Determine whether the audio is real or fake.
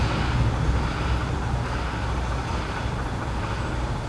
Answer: real